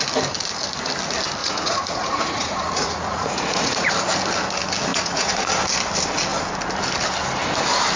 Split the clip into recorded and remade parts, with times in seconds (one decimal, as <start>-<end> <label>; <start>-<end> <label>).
0.0-1.4 recorded; 1.4-3.9 remade; 3.9-4.9 recorded; 4.9-5.4 remade; 5.4-8.0 recorded